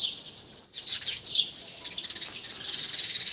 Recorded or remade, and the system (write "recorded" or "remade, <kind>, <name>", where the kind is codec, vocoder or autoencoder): recorded